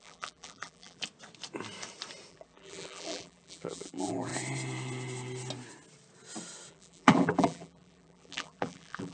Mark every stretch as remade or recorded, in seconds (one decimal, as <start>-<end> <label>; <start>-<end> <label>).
0.0-1.0 remade; 1.0-2.3 recorded; 2.3-4.3 remade; 4.3-6.7 recorded; 6.7-9.1 remade